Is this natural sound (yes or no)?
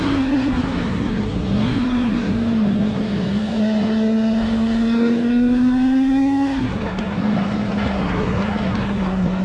no